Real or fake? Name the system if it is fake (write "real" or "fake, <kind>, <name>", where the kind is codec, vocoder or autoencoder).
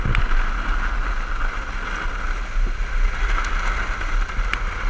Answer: real